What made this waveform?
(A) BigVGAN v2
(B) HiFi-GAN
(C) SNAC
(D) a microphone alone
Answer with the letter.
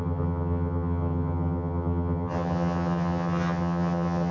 B